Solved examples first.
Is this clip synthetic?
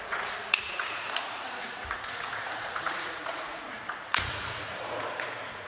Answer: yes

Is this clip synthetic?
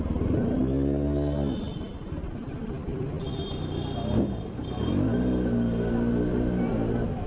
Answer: no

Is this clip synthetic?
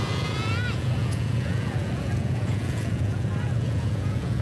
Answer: yes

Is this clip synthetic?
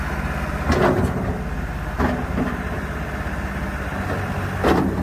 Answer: no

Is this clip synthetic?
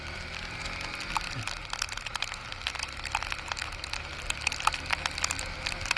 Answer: no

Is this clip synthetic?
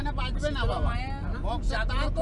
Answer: no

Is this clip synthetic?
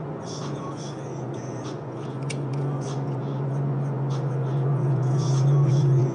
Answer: yes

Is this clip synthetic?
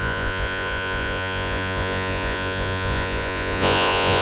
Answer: yes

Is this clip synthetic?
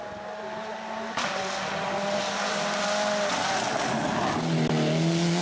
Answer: no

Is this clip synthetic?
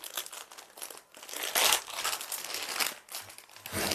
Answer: no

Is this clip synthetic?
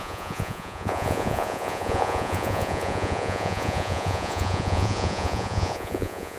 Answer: yes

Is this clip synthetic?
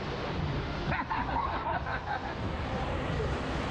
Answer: no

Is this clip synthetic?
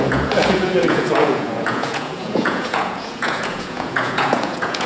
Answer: yes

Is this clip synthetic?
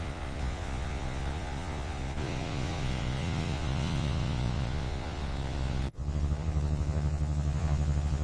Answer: yes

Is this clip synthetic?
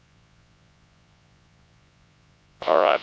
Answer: yes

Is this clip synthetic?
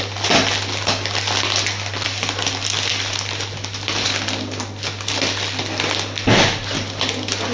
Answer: no